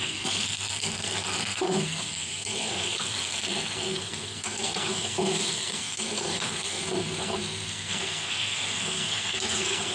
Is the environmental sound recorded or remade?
remade